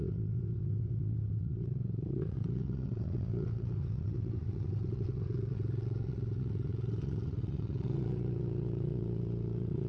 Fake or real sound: fake